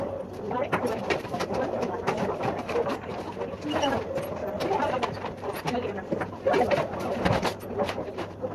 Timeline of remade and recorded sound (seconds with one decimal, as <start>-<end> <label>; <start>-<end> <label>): 0.0-3.1 remade; 3.1-4.6 recorded; 4.6-8.5 remade